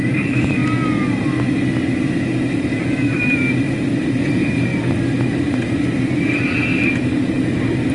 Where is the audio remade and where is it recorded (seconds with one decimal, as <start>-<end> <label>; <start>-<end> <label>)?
0.0-0.6 remade; 0.6-2.6 recorded; 2.6-4.7 remade; 4.7-7.0 recorded; 7.0-7.9 remade